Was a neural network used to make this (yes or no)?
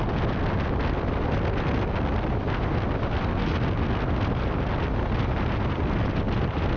no